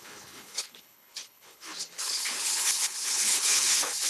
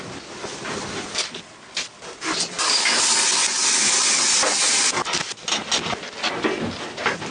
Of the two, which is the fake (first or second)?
first